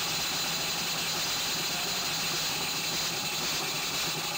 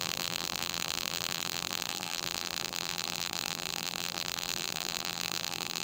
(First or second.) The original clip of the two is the first